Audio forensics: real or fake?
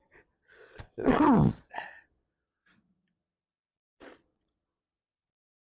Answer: fake